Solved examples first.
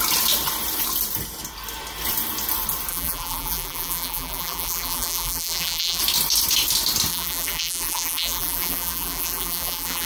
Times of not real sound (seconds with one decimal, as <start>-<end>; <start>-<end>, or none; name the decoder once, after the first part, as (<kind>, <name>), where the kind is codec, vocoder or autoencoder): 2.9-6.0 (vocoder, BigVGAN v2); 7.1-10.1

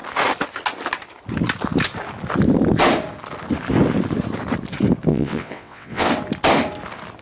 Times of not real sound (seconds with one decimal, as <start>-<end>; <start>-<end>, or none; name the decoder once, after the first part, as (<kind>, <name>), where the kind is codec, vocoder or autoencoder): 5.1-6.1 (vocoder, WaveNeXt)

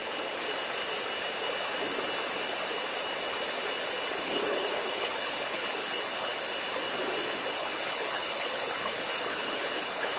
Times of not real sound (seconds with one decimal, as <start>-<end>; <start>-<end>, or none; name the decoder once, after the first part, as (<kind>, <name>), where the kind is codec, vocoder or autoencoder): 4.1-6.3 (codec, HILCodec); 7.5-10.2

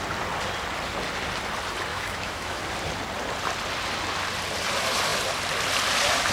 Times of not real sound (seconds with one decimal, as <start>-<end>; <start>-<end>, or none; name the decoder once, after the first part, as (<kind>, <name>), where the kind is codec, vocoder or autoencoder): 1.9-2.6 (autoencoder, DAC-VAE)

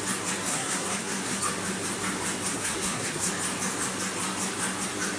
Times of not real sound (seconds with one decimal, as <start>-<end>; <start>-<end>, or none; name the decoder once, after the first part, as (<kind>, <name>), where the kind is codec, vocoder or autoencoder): 0.5-1.4 (codec, SNAC); 2.5-3.3